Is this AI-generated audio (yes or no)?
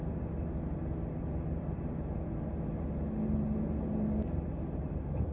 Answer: no